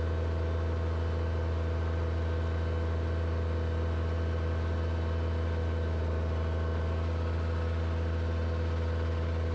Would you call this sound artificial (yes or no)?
no